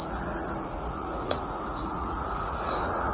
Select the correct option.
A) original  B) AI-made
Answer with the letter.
B